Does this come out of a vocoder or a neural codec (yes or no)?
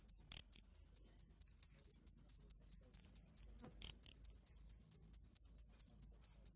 no